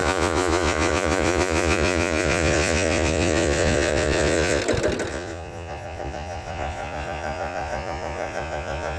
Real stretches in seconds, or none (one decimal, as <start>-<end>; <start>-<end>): 4.6-5.1